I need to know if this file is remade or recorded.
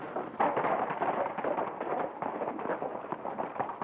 recorded